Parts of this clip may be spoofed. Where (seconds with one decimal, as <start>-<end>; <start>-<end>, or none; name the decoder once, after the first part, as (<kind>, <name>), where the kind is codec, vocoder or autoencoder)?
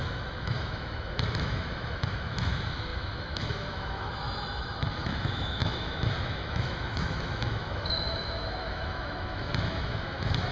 0.0-10.5 (autoencoder, DAC-VAE)